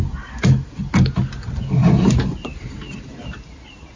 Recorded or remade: recorded